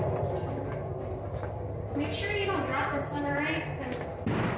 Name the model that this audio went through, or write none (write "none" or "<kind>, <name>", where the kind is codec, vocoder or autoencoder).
none